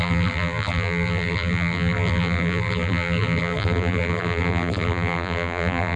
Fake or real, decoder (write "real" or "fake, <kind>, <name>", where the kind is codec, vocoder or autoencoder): fake, vocoder, BigVGAN v2